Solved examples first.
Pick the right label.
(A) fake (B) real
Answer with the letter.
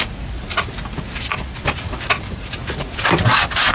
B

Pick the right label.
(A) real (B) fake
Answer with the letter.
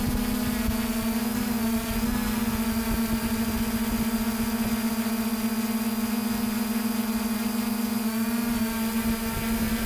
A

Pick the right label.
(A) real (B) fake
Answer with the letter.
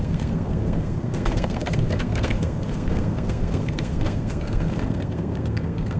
B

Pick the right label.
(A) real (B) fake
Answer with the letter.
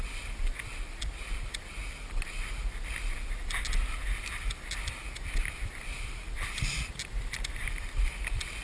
A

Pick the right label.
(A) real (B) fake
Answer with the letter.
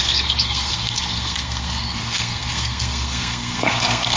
B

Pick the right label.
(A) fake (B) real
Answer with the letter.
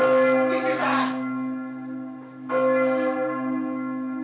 B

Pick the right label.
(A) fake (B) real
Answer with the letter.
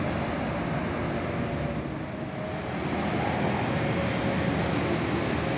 B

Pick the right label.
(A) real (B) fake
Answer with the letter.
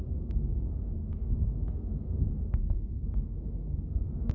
B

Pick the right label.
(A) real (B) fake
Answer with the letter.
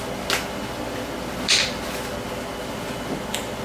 A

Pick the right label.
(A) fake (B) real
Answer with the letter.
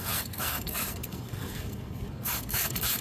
A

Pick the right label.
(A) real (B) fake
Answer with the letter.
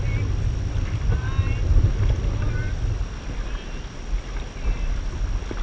A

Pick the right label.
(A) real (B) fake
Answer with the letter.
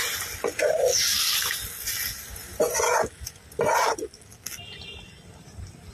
A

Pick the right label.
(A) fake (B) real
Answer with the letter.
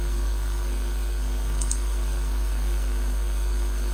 A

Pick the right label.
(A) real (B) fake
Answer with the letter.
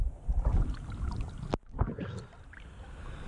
A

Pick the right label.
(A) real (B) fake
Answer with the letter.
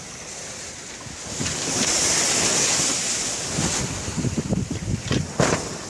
A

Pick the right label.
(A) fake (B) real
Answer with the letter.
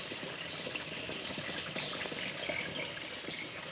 B